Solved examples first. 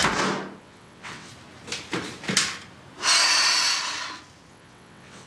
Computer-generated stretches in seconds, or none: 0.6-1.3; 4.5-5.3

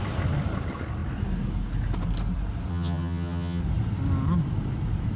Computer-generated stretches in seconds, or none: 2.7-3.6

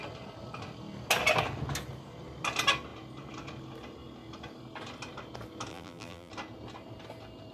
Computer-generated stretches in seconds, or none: 5.7-6.3

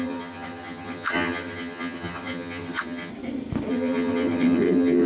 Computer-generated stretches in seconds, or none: 0.0-3.1; 3.7-5.1

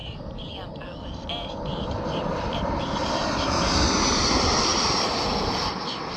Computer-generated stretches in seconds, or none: none

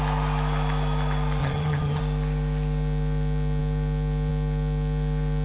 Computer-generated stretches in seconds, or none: 1.4-2.0